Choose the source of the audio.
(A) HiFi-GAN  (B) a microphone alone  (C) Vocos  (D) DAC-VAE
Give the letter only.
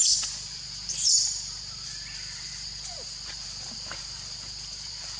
B